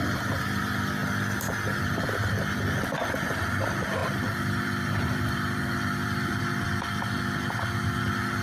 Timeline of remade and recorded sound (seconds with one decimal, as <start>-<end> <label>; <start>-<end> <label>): 0.0-4.0 recorded; 4.0-6.4 remade; 6.4-8.4 recorded